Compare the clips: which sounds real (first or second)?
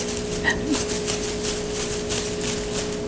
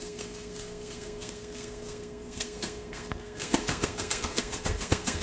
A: first